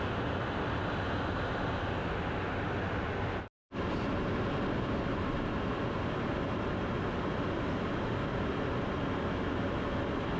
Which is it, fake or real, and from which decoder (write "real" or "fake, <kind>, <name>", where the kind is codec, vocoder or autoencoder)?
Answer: real